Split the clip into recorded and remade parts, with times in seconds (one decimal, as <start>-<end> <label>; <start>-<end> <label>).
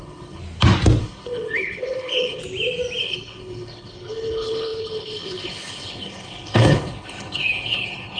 0.0-0.4 remade; 0.4-1.0 recorded; 1.0-2.4 remade; 2.4-3.0 recorded; 3.0-8.2 remade